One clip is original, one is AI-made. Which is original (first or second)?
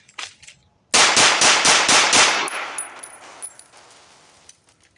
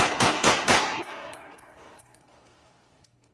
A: first